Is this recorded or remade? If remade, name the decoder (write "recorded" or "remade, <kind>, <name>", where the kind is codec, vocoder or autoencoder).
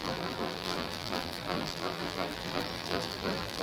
remade, vocoder, BigVGAN v2